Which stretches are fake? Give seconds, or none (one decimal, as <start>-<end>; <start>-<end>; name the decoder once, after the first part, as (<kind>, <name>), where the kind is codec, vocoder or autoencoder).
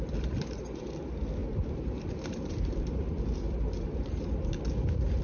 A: 1.4-4.5 (vocoder, BigVGAN v2)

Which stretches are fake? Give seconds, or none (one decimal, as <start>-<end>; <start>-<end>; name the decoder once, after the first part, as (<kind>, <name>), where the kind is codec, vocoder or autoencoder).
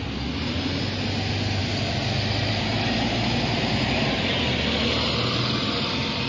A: none